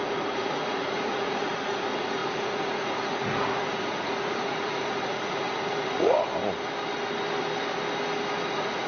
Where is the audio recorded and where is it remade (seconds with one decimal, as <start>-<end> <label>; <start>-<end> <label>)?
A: 0.0-6.3 remade; 6.3-8.5 recorded; 8.5-8.9 remade